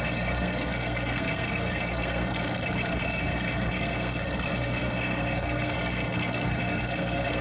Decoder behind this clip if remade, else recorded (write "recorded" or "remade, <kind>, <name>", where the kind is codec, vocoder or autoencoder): remade, codec, SNAC